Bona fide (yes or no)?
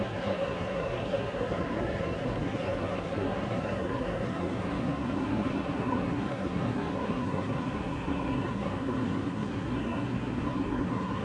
no